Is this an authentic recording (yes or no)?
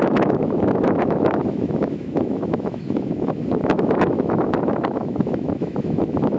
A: no